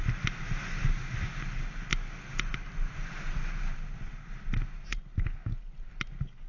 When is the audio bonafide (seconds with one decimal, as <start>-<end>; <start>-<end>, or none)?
0.0-6.5